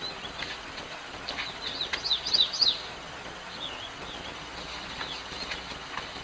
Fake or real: real